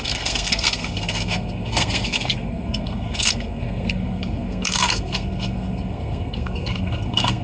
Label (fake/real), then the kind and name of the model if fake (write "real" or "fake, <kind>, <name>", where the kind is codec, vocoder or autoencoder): fake, codec, SNAC